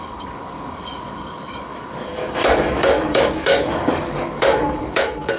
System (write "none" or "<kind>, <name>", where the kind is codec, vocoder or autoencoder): codec, DAC